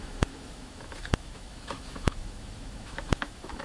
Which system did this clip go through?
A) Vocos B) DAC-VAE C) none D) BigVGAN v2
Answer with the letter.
B